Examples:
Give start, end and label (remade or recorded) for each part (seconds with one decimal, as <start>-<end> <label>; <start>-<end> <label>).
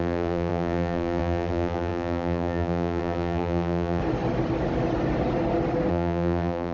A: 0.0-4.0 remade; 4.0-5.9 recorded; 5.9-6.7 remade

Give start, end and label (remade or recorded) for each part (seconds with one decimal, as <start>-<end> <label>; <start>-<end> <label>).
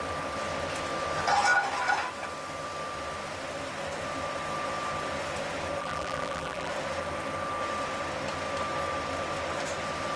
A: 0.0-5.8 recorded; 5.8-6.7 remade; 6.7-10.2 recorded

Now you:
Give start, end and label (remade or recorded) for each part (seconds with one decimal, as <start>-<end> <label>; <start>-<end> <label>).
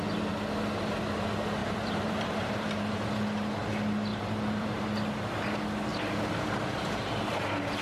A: 0.0-1.6 recorded; 1.6-2.8 remade; 2.8-4.1 recorded; 4.1-4.8 remade; 4.8-7.8 recorded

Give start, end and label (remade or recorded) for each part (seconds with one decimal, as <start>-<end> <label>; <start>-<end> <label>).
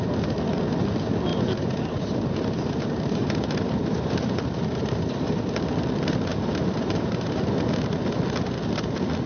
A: 0.0-1.3 recorded; 1.3-5.1 remade; 5.1-6.3 recorded; 6.3-7.4 remade; 7.4-9.3 recorded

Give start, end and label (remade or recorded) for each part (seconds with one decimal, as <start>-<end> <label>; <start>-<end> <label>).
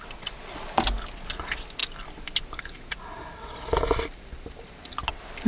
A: 0.0-5.5 recorded